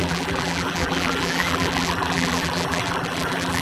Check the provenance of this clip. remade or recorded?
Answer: remade